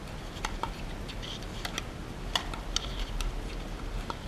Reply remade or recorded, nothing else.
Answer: recorded